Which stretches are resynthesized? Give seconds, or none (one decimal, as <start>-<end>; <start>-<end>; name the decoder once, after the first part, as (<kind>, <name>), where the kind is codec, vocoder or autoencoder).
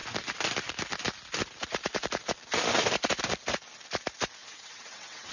4.4-5.3 (vocoder, WaveNeXt)